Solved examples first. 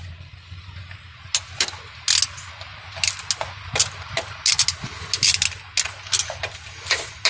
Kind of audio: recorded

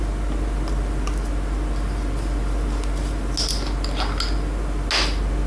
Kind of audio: recorded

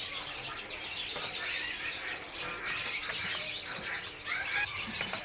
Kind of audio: remade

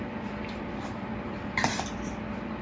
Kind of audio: remade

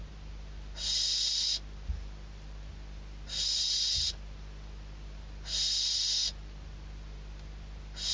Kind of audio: recorded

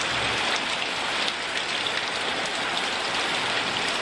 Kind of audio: recorded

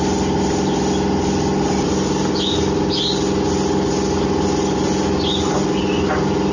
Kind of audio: recorded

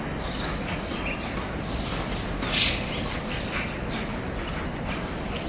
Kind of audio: recorded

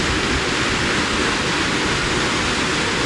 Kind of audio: recorded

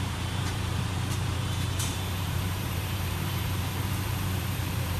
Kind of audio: remade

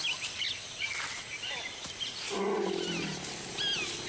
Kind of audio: recorded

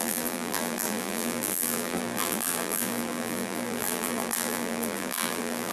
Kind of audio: remade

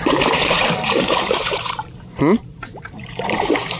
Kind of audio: remade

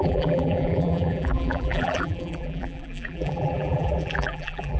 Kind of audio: remade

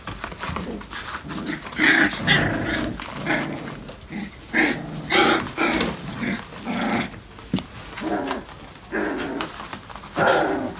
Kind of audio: recorded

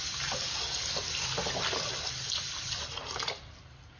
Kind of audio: recorded